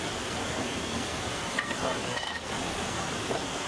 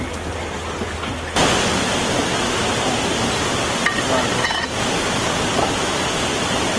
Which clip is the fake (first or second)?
first